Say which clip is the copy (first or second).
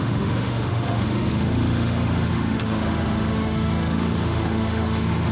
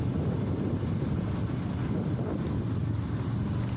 first